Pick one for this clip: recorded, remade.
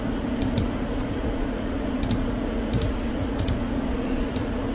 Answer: remade